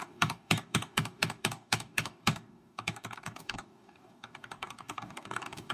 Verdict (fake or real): fake